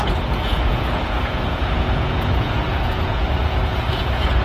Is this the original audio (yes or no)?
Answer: no